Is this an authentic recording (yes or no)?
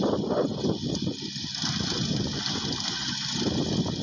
yes